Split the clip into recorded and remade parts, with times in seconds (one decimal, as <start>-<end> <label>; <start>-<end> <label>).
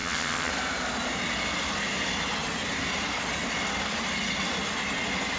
0.0-0.5 remade; 0.5-5.4 recorded